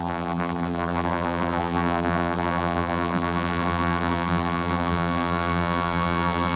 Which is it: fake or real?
fake